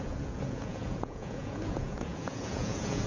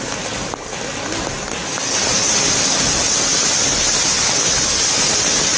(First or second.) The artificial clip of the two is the first